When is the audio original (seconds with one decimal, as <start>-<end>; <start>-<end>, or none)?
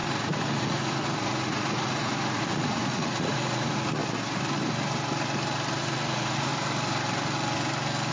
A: 4.0-5.8; 6.5-8.1